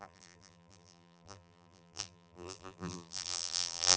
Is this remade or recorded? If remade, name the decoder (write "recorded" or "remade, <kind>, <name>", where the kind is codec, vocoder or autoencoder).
remade, vocoder, BigVGAN v2